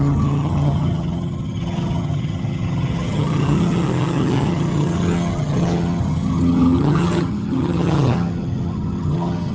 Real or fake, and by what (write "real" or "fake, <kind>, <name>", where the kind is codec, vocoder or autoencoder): fake, vocoder, HiFi-GAN